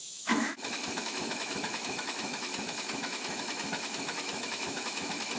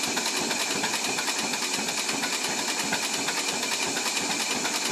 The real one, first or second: second